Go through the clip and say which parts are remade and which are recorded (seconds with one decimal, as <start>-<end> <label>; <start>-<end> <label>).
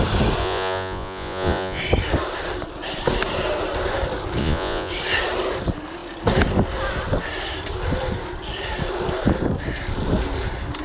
0.0-0.4 recorded; 0.4-1.8 remade; 1.8-4.4 recorded; 4.4-4.9 remade; 4.9-10.8 recorded